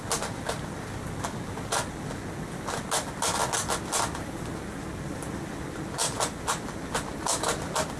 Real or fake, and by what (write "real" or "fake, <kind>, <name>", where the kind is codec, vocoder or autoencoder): real